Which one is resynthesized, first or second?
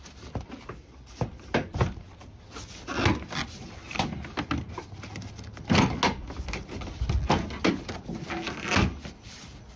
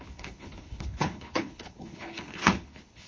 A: second